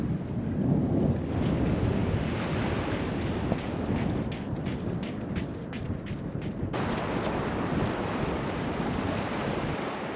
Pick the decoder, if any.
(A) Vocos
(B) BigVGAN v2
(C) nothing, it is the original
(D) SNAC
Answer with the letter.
C